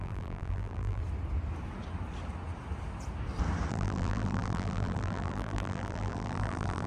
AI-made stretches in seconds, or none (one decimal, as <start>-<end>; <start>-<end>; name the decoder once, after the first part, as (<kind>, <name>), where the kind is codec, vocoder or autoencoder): 0.0-1.0 (vocoder, BigVGAN v2); 3.7-6.9